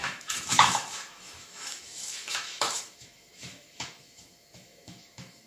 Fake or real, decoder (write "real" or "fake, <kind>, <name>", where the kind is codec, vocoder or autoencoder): fake, autoencoder, DAC-VAE